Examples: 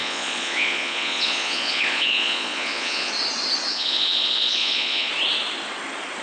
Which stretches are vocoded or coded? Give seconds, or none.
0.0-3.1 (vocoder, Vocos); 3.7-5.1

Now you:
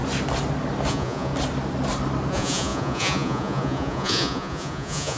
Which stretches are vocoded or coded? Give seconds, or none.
0.9-1.3 (vocoder, Vocos); 2.3-5.2

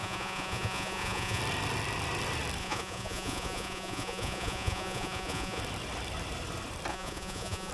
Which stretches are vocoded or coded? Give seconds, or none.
0.0-1.4 (vocoder, Vocos); 2.6-5.6; 6.9-7.7

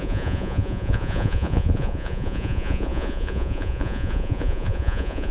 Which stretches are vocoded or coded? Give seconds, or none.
0.0-5.3 (vocoder, Vocos)

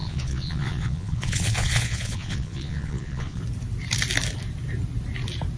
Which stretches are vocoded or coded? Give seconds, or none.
0.0-3.4 (vocoder, Vocos)